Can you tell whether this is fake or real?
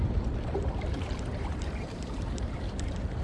fake